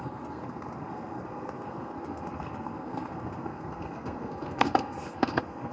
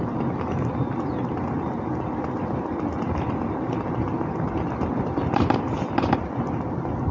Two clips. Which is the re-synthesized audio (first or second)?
first